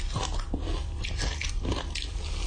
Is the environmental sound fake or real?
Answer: real